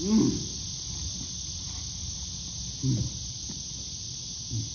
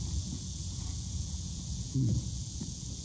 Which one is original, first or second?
first